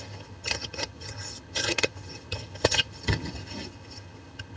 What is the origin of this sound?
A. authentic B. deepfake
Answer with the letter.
B